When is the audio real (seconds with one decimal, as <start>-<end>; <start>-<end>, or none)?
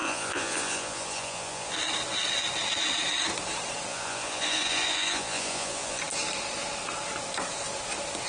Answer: 1.7-3.9; 6.0-8.3